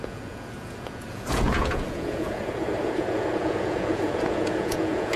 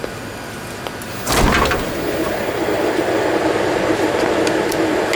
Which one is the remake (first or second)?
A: first